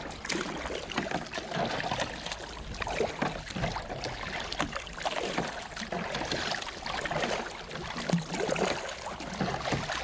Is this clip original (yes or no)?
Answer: yes